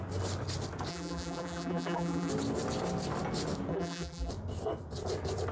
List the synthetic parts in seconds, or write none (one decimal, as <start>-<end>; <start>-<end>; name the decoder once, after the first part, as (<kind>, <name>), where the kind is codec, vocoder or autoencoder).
0.9-2.3 (vocoder, BigVGAN v2); 3.7-4.3